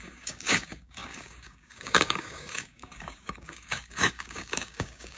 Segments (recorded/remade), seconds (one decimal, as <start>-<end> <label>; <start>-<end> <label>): 0.0-5.2 remade